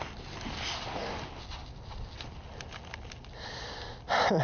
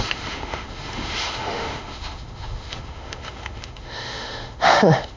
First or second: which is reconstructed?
second